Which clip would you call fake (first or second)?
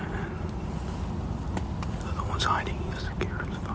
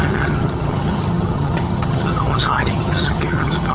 second